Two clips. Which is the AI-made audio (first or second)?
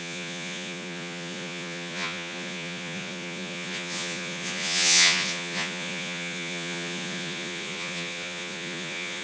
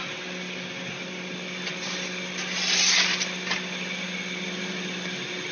first